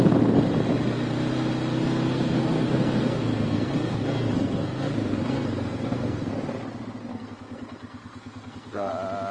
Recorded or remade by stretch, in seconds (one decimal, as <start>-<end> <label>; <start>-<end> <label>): 0.0-1.7 recorded; 1.7-6.3 remade; 6.3-7.1 recorded; 7.1-8.9 remade; 8.9-9.3 recorded